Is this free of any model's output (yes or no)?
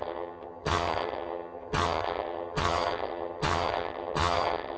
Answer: no